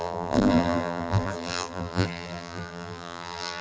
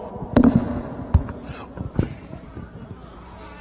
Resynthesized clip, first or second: first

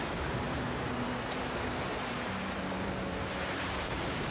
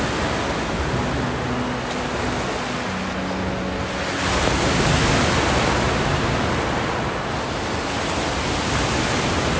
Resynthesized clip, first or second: first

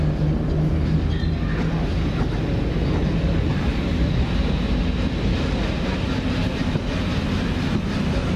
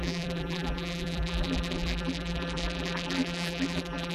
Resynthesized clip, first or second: second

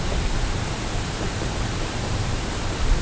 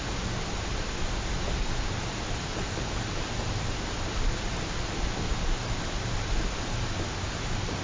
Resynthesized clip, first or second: first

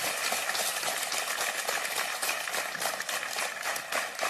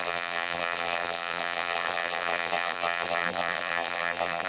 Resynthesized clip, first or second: second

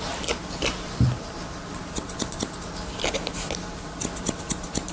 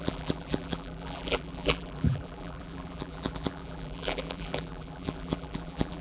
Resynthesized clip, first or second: second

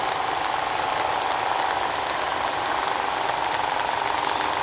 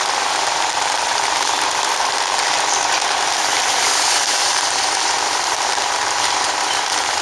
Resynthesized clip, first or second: second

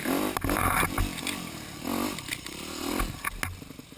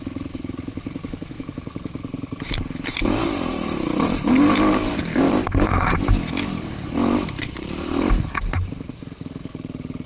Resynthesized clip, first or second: second